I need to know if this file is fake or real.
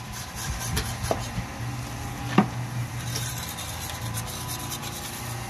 real